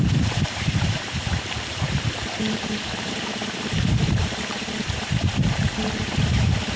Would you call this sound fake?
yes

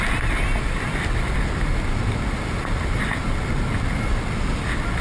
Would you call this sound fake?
no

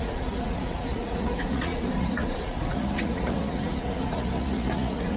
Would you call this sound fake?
yes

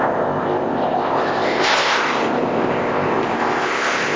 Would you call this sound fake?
yes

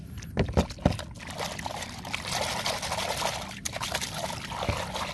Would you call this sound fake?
no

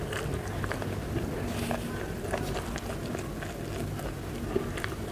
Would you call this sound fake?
no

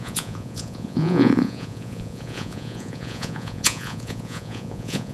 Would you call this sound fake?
yes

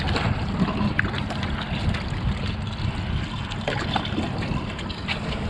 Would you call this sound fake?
no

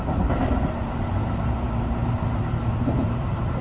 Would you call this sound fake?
yes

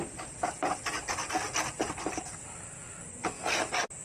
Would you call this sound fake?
no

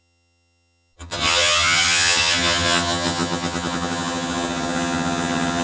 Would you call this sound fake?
yes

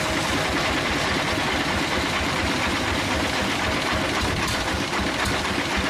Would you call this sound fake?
no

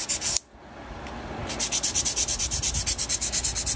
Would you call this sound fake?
no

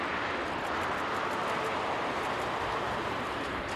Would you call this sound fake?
no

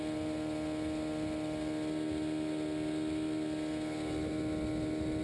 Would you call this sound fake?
no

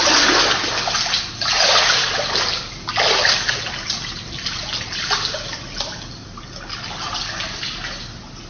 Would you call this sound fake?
no